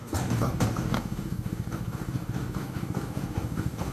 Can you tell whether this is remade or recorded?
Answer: remade